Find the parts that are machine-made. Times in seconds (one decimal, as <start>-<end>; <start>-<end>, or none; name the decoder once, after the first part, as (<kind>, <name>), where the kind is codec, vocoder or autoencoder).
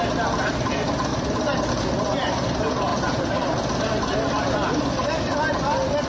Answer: none